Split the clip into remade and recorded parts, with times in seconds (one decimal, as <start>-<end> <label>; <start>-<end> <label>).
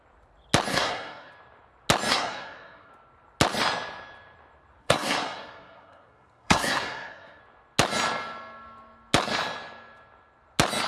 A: 0.0-0.7 recorded; 0.7-1.3 remade; 1.3-2.1 recorded; 2.1-2.9 remade; 2.9-4.8 recorded; 4.8-7.4 remade; 7.4-10.9 recorded